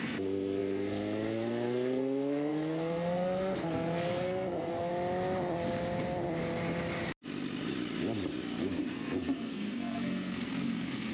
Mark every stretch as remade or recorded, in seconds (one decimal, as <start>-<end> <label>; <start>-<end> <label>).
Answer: 0.0-4.9 remade; 4.9-8.6 recorded; 8.6-11.1 remade